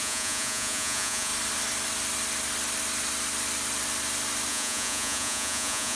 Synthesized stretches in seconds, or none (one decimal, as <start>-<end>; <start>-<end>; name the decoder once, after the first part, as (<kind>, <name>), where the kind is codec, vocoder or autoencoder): 0.0-1.3 (vocoder, Vocos); 4.5-6.0